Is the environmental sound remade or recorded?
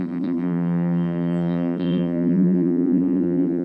remade